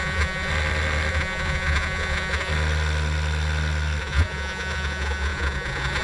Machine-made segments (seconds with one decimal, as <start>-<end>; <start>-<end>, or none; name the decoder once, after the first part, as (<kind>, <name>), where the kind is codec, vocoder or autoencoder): 0.0-0.5 (vocoder, Vocos); 1.1-2.5; 4.0-6.0